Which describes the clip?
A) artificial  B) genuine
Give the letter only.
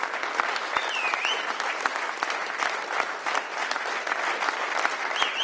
B